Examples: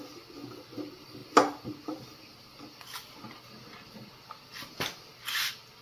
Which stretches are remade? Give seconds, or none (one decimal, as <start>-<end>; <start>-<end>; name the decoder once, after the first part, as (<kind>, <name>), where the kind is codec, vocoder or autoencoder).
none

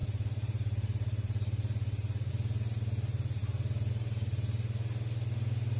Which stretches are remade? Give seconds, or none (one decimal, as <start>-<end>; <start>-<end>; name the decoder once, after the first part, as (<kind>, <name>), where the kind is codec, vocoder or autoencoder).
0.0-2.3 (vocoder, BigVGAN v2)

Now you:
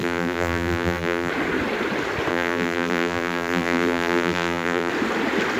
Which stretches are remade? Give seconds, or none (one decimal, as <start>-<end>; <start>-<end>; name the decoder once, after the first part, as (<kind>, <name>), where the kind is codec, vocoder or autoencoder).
0.0-1.3 (vocoder, BigVGAN v2); 2.3-4.9

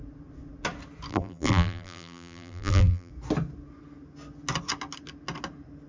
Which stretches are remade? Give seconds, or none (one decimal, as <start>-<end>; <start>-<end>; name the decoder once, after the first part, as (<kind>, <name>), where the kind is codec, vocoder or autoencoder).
1.1-3.1 (vocoder, BigVGAN v2)

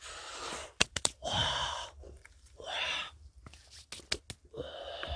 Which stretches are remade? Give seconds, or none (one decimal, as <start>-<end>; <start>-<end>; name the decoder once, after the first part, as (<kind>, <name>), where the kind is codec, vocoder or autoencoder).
0.6-3.7 (vocoder, BigVGAN v2)

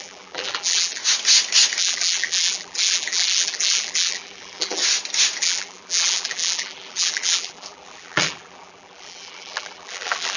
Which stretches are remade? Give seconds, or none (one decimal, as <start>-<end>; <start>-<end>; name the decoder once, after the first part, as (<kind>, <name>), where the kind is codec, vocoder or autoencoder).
0.0-1.0 (vocoder, BigVGAN v2); 1.8-4.8; 5.4-10.4

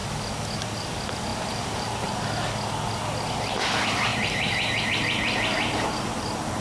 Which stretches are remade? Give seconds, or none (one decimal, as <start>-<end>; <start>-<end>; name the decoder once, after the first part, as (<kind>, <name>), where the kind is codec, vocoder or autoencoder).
1.3-2.1 (vocoder, BigVGAN v2); 4.1-4.8

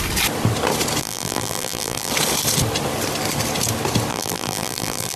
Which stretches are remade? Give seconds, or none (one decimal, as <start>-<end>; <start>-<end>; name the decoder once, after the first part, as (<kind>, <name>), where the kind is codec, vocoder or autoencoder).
1.0-2.1 (vocoder, BigVGAN v2); 4.1-5.2